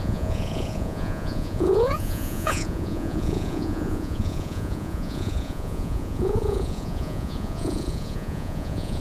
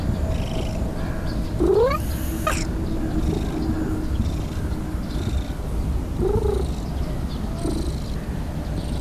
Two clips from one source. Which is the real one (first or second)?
second